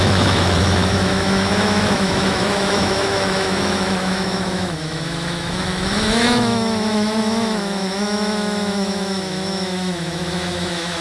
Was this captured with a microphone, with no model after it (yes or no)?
no